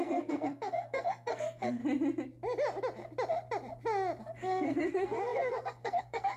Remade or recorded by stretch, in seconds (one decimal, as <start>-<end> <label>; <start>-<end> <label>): 0.0-1.8 remade; 1.8-4.2 recorded; 4.2-6.4 remade